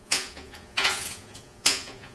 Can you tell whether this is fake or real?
fake